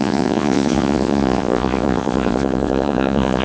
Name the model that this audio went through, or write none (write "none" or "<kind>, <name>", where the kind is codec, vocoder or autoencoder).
vocoder, Vocos